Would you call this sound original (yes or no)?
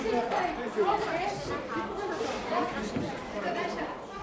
no